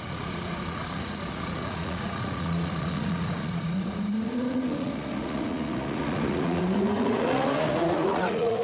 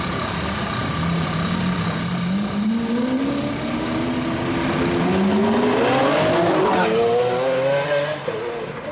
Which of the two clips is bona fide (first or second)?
second